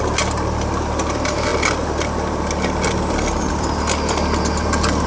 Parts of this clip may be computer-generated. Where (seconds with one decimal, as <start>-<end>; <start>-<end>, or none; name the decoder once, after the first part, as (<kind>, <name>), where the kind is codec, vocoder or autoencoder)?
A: none